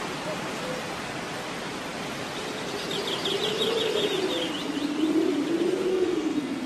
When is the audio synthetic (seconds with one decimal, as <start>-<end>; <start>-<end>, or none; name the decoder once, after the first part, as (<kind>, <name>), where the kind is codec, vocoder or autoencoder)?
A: 5.9-6.7 (codec, SNAC)